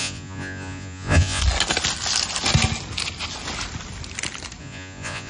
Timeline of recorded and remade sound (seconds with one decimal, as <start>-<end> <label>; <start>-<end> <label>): 0.0-1.4 remade; 1.4-4.6 recorded; 4.6-5.3 remade